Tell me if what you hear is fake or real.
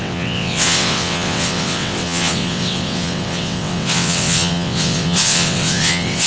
fake